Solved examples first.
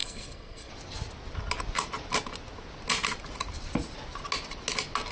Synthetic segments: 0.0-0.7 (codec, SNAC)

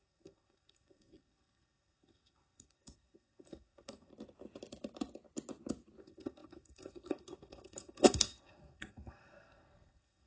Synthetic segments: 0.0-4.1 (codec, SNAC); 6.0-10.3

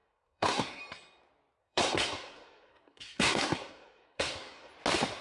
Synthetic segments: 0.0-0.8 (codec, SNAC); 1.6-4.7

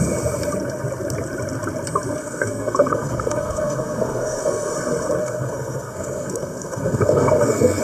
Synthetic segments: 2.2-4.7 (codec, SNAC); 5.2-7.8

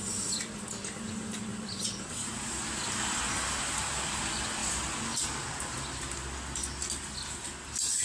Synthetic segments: none

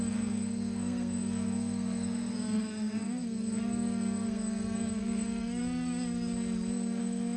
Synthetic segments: 0.0-5.6 (codec, SNAC); 7.0-7.4